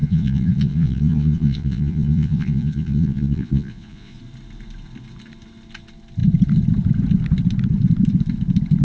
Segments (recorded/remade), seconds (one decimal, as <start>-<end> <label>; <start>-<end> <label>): 0.0-4.2 remade; 4.2-8.8 recorded